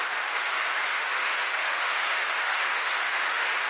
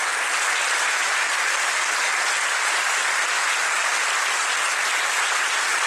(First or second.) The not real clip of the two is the first